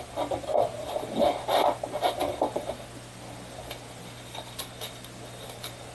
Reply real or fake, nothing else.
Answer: real